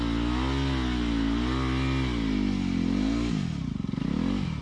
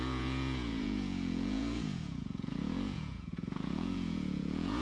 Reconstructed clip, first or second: second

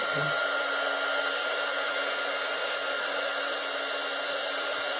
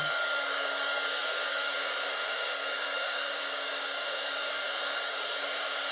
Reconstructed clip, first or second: second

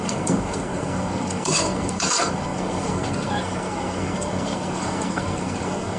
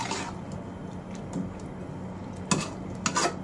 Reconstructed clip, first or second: first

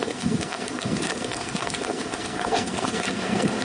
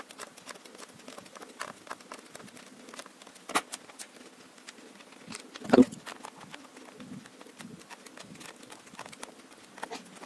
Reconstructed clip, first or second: first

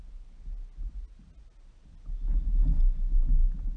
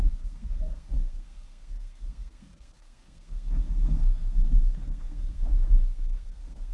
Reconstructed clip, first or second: second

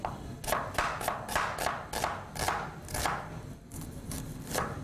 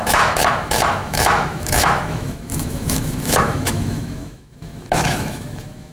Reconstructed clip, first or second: second